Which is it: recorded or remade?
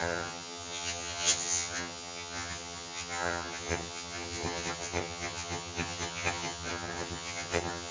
remade